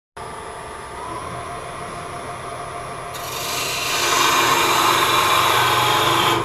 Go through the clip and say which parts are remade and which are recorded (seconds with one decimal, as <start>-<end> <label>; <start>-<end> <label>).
0.0-6.4 recorded